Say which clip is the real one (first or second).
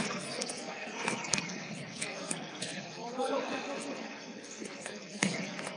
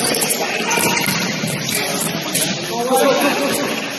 second